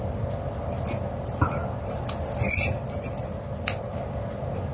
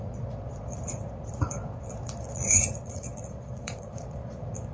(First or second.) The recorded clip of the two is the first